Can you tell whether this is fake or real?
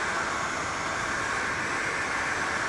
real